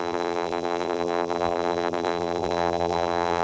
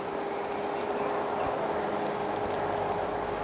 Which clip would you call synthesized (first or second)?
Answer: first